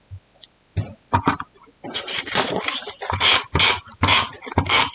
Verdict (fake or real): real